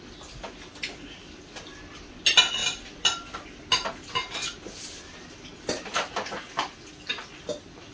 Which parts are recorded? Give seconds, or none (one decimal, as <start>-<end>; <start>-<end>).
0.0-7.9